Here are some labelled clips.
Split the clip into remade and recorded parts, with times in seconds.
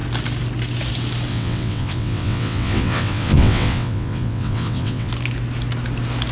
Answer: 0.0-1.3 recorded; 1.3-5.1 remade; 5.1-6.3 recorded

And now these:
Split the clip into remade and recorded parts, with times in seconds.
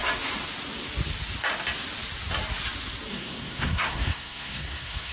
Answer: 0.0-3.1 recorded; 3.1-5.1 remade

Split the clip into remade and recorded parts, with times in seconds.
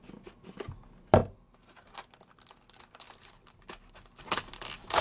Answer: 0.0-5.0 recorded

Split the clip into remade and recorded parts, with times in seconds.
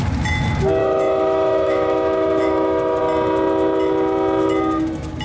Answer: 0.0-0.8 recorded; 0.8-3.0 remade; 3.0-5.2 recorded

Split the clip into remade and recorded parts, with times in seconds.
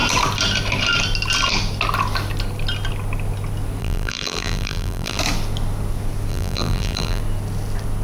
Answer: 0.0-3.8 recorded; 3.8-5.2 remade; 5.2-6.3 recorded; 6.3-7.2 remade; 7.2-8.0 recorded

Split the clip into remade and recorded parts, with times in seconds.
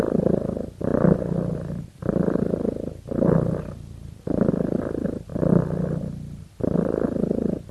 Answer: 0.0-7.7 recorded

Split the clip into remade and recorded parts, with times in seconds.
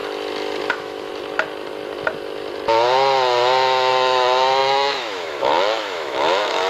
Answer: 0.0-0.7 recorded; 0.7-1.1 remade; 1.1-3.9 recorded; 3.9-6.7 remade